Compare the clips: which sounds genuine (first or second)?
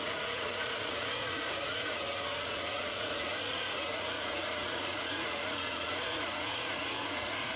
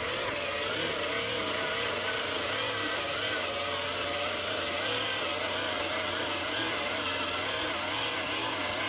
second